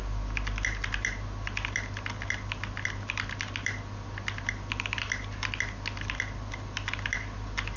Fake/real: real